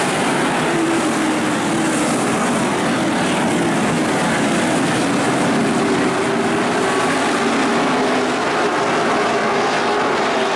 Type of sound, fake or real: real